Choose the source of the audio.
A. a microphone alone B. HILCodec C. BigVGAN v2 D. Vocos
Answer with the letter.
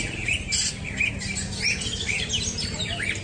A